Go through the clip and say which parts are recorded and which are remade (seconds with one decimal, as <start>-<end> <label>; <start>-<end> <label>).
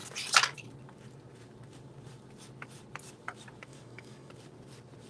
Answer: 0.0-3.7 recorded; 3.7-4.3 remade; 4.3-5.1 recorded